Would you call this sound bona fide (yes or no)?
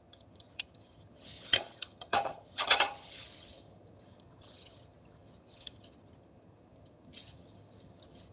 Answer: no